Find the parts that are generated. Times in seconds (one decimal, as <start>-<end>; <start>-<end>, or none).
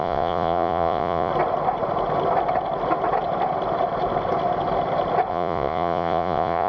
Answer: 0.0-1.3; 5.3-6.7